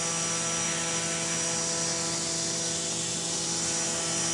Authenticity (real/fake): real